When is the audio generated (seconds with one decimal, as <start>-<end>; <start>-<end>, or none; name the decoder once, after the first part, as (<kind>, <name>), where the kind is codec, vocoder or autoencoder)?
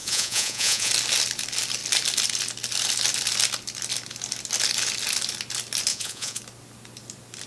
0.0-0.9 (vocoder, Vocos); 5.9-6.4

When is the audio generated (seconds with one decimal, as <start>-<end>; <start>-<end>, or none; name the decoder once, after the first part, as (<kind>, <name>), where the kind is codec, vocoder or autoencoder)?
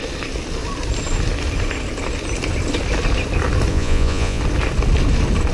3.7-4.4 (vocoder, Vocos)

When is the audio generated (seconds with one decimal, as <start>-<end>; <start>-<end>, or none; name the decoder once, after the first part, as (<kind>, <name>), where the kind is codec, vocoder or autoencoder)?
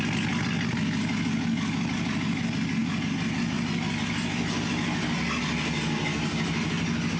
none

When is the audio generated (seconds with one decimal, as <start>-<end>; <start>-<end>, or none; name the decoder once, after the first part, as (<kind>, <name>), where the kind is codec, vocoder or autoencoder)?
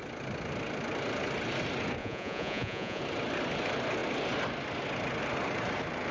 2.0-3.0 (vocoder, Vocos)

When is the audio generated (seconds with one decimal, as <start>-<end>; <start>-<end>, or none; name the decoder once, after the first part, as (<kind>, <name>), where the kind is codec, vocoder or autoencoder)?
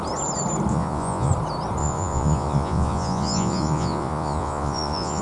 0.7-1.3 (vocoder, Vocos); 1.8-5.2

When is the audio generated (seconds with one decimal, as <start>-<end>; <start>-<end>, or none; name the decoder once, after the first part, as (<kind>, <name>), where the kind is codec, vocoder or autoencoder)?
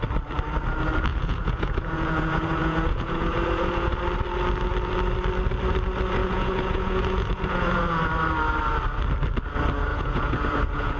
1.1-4.0 (vocoder, Vocos); 6.2-8.1; 9.9-11.0